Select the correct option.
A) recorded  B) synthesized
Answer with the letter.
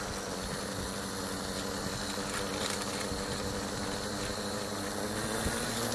A